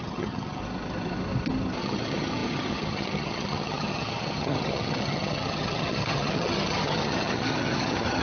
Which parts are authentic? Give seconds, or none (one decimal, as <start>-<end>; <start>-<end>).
0.6-1.8